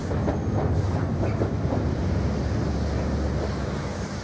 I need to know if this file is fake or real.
real